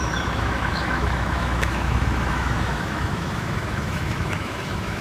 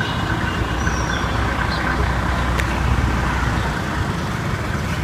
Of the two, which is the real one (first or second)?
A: second